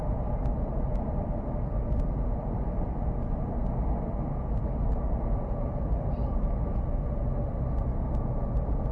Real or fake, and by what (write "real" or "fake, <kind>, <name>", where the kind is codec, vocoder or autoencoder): real